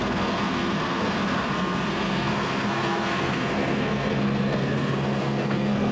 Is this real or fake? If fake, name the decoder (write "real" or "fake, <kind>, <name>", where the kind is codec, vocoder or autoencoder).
fake, codec, SNAC